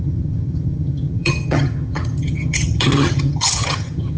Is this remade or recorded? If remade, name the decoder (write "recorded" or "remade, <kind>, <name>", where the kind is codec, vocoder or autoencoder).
remade, vocoder, HiFi-GAN